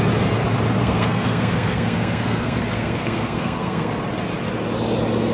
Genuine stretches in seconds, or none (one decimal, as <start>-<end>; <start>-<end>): 0.0-0.8; 4.0-5.3